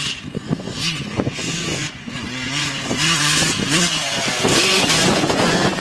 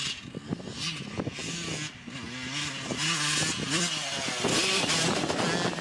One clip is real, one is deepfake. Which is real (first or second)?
second